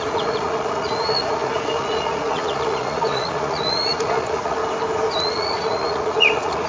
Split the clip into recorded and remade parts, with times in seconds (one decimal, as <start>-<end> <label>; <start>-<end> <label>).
0.0-4.6 remade; 4.6-5.1 recorded; 5.1-6.7 remade